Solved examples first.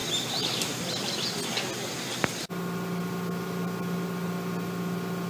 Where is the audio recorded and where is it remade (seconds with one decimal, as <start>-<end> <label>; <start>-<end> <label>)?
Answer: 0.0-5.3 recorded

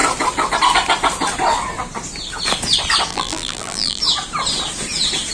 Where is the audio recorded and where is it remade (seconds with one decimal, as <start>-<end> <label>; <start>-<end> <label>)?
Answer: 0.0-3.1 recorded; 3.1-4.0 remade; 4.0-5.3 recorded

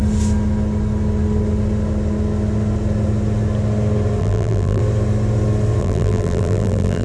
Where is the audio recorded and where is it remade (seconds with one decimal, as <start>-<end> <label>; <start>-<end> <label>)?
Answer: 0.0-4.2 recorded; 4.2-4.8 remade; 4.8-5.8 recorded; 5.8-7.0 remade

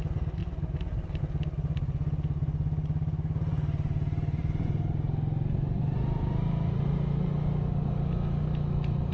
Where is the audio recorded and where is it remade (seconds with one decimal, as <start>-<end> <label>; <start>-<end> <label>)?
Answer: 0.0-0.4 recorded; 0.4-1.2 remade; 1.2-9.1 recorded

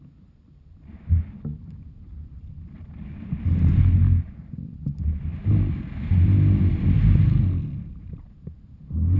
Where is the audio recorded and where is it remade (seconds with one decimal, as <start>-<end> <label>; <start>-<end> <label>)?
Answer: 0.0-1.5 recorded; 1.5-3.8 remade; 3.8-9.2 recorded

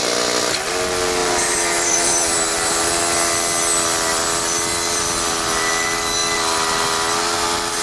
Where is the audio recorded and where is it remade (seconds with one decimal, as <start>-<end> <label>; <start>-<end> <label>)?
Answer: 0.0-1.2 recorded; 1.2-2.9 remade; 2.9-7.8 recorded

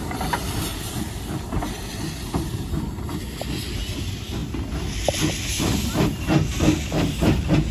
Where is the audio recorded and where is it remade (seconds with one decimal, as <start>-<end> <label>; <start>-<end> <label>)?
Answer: 0.0-0.7 recorded; 0.7-1.8 remade; 1.8-7.7 recorded

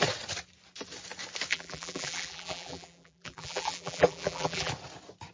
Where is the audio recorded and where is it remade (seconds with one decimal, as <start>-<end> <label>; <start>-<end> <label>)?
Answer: 0.0-1.5 recorded; 1.5-4.7 remade; 4.7-5.3 recorded